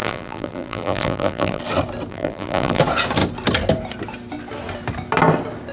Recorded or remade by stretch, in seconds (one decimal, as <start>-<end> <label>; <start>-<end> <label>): 0.0-1.6 remade; 1.6-2.1 recorded; 2.1-2.8 remade; 2.8-5.7 recorded